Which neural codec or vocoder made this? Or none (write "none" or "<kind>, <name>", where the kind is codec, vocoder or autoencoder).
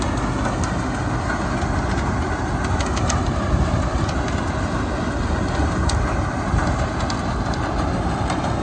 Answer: none